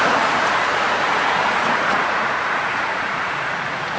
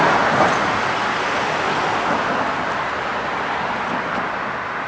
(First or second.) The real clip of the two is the second